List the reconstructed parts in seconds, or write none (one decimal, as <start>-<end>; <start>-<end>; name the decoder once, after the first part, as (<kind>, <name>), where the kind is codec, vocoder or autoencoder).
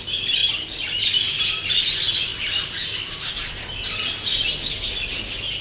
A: none